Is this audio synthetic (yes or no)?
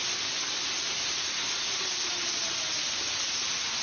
no